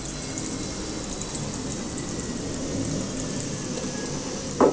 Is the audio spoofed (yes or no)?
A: no